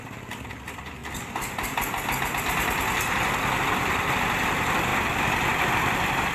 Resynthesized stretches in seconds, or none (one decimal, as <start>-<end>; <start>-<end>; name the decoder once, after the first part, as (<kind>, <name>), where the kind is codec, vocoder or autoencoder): 0.0-1.0 (vocoder, BigVGAN v2); 3.6-4.9; 5.6-6.3